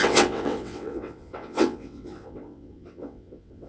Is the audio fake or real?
fake